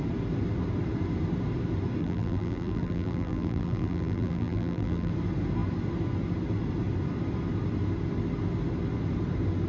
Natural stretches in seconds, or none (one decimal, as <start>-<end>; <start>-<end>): 0.0-2.0; 5.1-9.7